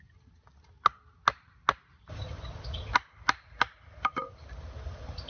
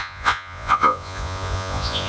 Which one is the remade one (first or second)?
second